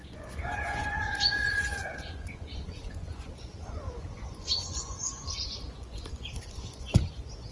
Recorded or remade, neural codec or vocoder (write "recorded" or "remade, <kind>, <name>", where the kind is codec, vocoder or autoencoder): remade, vocoder, Vocos